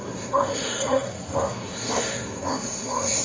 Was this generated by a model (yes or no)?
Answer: yes